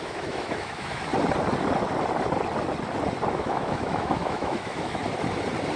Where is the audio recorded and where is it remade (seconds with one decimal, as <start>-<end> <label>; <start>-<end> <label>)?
0.0-1.1 remade; 1.1-3.3 recorded; 3.3-5.0 remade; 5.0-5.8 recorded